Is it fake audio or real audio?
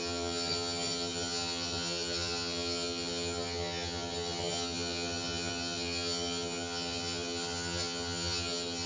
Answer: fake